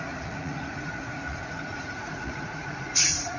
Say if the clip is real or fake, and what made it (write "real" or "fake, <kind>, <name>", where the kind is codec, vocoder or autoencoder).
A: fake, vocoder, Vocos